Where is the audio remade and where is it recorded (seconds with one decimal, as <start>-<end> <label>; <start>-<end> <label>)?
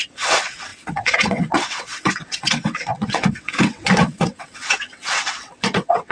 0.0-6.1 remade